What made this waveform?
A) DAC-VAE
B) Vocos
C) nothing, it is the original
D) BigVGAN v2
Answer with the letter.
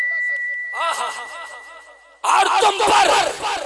D